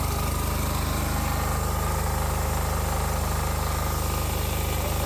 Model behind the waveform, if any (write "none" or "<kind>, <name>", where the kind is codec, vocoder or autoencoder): none